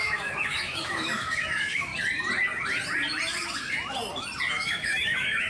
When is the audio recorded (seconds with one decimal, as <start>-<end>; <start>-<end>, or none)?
1.9-4.5

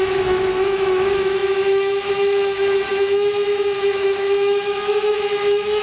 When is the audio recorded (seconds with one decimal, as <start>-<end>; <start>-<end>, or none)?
none

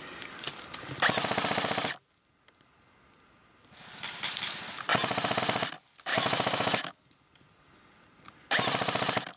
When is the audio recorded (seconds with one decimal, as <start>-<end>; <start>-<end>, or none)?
0.0-6.1; 7.0-9.4

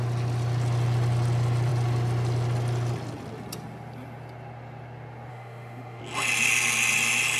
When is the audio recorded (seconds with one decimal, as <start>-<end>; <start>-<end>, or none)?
0.0-5.3; 6.0-7.4

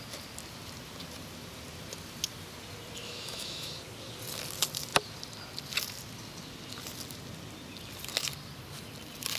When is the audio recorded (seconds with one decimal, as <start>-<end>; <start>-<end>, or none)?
0.0-3.0; 3.7-9.4

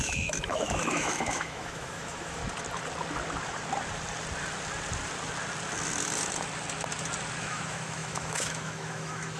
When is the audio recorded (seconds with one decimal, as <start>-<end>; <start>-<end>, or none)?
2.4-7.4